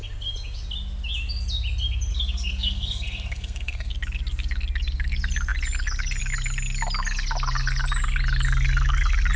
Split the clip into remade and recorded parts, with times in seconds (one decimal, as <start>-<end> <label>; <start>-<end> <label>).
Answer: 0.0-2.1 recorded; 2.1-3.9 remade; 3.9-9.4 recorded